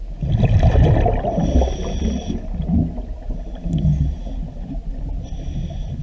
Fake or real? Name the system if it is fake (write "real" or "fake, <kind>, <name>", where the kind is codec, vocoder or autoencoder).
real